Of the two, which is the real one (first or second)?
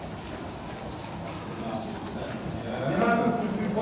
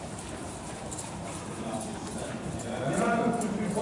first